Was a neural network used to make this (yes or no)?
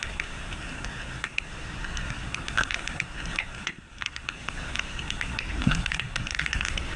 yes